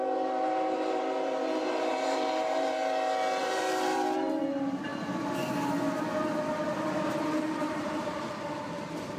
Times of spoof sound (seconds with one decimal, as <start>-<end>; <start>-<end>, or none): 0.0-2.8; 3.4-4.9; 7.2-9.2